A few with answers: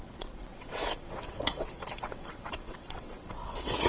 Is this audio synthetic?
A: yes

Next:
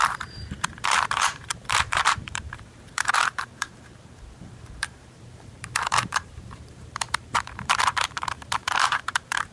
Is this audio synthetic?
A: yes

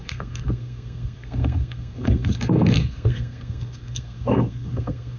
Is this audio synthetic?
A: yes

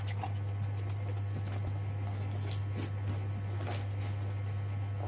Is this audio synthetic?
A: no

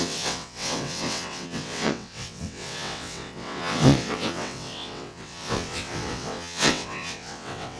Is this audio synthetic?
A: yes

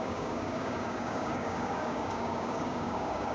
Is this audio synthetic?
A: yes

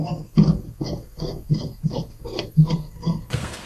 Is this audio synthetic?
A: yes